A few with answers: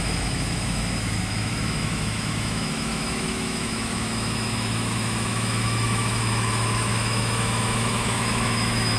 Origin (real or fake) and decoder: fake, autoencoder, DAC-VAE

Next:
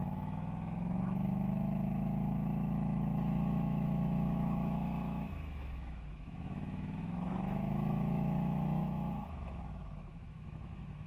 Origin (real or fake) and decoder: fake, autoencoder, DAC-VAE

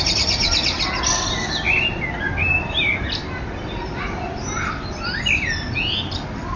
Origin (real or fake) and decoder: real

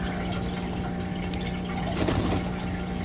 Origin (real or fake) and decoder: real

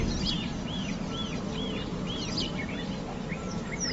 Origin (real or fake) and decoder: real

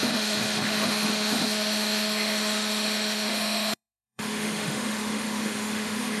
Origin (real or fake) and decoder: fake, autoencoder, DAC-VAE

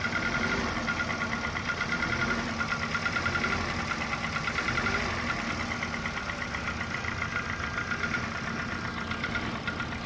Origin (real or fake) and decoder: real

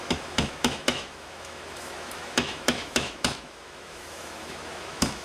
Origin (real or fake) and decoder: fake, autoencoder, DAC-VAE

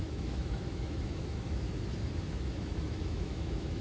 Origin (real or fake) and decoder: fake, autoencoder, DAC-VAE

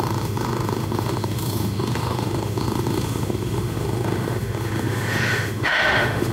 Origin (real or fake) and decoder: fake, autoencoder, DAC-VAE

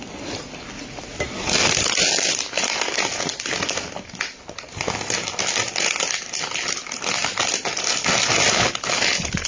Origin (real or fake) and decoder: real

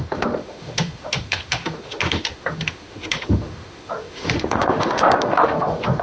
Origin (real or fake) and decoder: fake, autoencoder, DAC-VAE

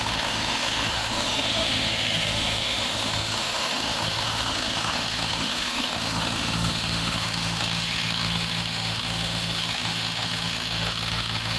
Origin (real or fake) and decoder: fake, autoencoder, DAC-VAE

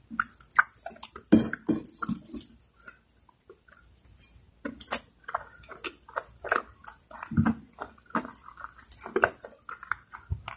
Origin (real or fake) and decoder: real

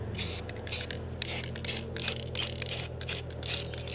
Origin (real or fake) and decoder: real